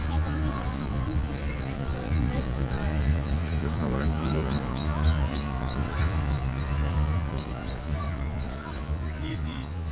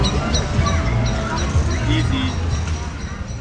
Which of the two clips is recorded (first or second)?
second